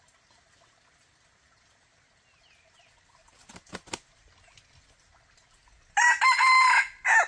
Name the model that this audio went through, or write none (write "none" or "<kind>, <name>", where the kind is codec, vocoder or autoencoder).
none